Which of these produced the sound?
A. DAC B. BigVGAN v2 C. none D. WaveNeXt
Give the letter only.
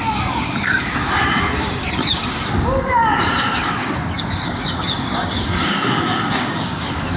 A